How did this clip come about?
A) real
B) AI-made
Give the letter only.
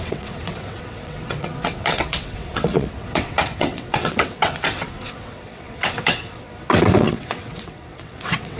B